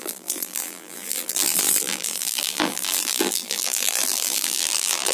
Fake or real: fake